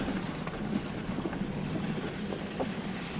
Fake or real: real